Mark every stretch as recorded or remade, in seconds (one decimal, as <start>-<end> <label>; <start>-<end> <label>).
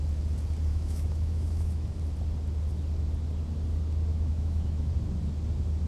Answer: 0.0-0.7 recorded; 0.7-2.0 remade; 2.0-4.1 recorded; 4.1-4.9 remade; 4.9-5.9 recorded